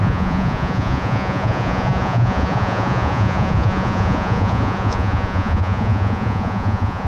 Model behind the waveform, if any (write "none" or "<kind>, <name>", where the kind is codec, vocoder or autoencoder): vocoder, Vocos